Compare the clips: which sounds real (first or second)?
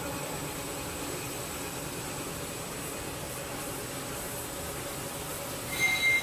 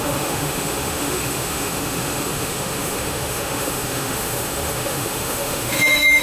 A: first